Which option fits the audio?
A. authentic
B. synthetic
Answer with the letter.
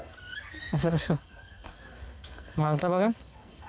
B